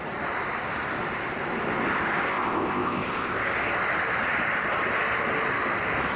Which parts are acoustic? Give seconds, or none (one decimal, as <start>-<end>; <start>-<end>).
0.0-2.3; 3.4-6.2